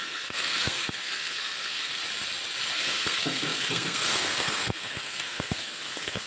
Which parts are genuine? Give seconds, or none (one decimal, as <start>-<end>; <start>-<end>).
2.0-2.7